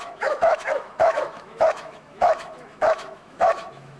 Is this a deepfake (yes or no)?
yes